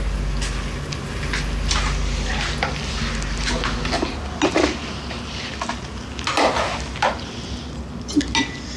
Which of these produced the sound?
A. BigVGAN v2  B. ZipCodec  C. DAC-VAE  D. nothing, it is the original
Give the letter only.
D